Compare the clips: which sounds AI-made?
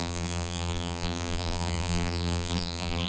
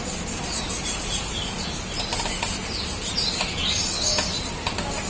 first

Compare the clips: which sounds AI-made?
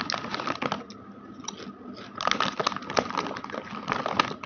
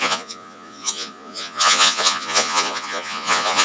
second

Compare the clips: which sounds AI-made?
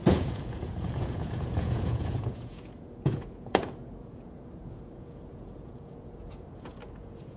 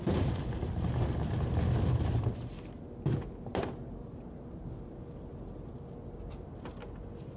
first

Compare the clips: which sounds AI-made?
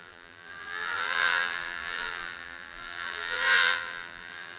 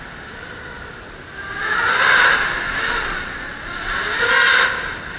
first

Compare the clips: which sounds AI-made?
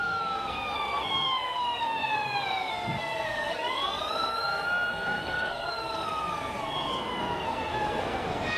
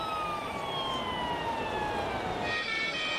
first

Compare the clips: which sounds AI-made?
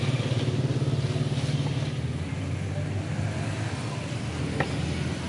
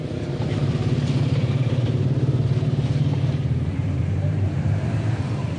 second